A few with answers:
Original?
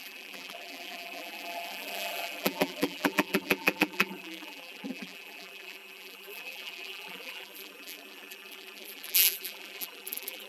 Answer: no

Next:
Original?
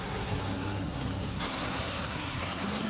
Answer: no